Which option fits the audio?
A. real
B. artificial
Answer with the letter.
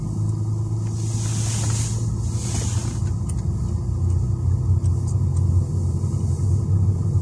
A